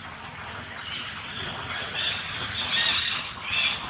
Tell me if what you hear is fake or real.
real